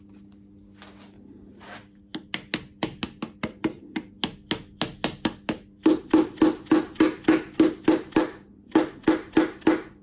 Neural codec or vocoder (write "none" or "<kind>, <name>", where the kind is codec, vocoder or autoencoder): none